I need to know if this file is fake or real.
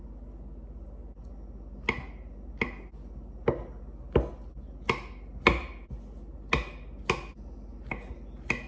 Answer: real